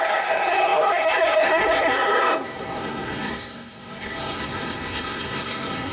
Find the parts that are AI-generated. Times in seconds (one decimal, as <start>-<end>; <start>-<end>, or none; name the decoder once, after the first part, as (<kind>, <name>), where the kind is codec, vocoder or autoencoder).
0.0-5.9 (codec, SNAC)